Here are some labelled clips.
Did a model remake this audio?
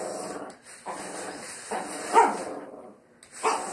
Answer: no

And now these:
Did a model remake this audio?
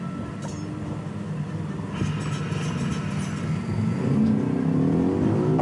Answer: no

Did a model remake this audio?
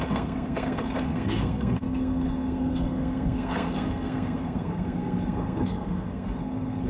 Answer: yes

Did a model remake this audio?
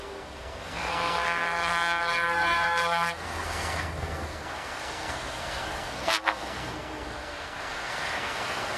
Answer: yes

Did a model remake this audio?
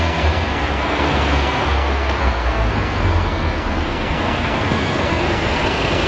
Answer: yes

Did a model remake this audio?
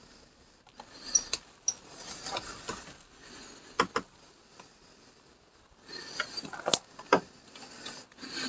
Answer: no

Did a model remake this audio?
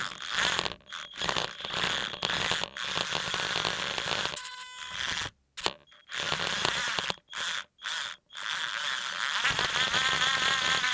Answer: no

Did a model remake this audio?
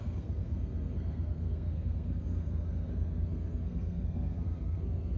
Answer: yes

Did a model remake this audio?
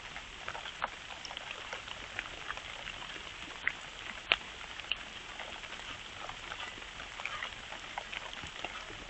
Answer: no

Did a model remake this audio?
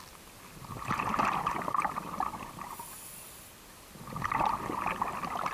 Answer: no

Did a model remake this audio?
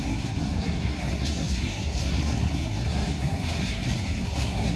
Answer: yes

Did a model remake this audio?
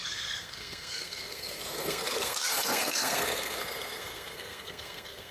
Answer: yes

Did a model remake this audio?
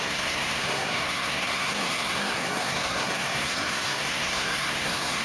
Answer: yes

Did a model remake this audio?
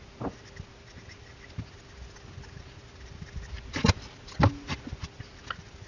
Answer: no